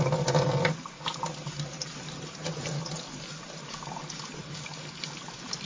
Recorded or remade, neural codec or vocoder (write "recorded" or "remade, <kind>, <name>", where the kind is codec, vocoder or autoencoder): recorded